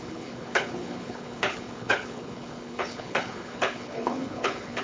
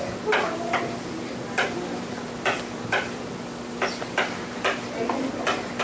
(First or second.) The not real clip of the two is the first